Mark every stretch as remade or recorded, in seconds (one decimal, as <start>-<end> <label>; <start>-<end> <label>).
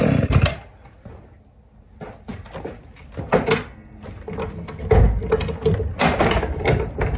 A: 0.0-7.2 recorded